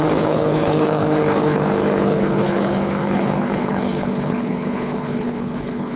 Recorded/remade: remade